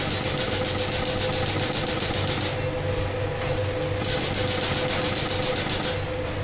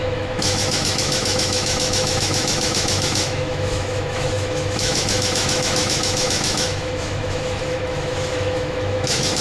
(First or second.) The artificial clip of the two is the second